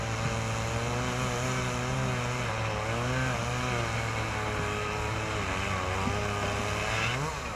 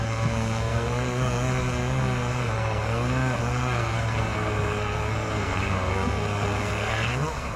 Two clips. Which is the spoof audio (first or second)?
second